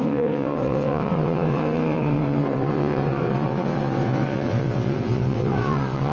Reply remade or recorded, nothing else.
remade